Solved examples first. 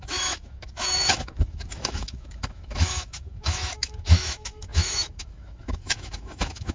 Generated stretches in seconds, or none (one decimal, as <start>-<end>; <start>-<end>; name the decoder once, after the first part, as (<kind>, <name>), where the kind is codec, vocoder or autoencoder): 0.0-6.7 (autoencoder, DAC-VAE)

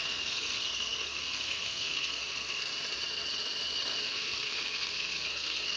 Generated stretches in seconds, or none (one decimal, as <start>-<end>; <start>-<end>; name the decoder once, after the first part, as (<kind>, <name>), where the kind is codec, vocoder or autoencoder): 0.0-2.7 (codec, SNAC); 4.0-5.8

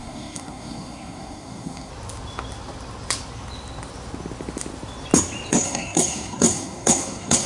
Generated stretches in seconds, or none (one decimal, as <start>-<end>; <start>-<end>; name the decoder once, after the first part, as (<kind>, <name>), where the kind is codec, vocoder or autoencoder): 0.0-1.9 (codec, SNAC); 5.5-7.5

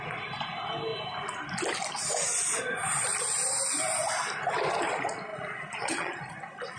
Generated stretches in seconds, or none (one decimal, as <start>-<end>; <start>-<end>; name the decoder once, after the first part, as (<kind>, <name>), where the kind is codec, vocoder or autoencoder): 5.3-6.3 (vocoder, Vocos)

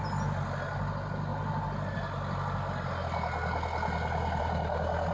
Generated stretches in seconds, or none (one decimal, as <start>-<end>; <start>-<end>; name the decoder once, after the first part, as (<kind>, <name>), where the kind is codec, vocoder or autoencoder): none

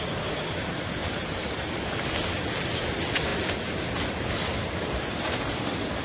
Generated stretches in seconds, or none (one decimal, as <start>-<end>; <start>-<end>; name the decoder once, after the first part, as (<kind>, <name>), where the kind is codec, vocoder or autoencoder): 1.0-1.7 (vocoder, BigVGAN v2)

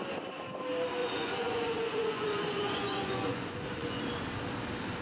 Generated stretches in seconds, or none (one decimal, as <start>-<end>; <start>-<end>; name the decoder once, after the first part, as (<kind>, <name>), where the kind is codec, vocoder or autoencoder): 1.0-4.0 (vocoder, Vocos)